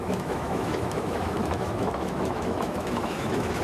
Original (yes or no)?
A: no